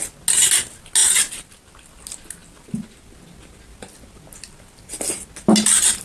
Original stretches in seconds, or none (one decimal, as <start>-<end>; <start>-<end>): 0.0-6.0